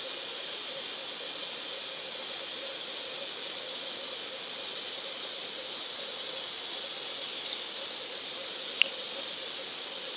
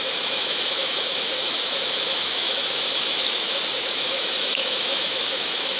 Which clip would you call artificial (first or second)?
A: second